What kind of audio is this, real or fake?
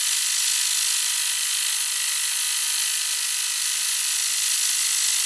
real